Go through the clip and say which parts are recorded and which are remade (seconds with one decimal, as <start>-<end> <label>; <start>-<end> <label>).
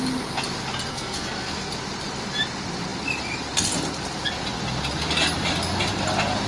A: 0.0-0.9 recorded; 0.9-1.7 remade; 1.7-6.5 recorded